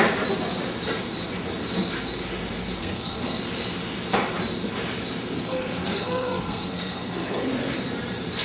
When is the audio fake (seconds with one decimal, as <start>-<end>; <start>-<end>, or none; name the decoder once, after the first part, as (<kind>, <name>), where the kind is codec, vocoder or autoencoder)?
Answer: 2.8-3.4 (codec, SNAC); 5.4-7.5